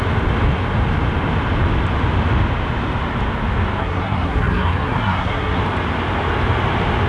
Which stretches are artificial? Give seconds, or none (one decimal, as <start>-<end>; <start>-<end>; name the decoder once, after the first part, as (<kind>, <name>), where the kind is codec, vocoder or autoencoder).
3.8-5.6 (codec, SNAC)